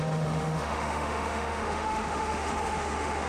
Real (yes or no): no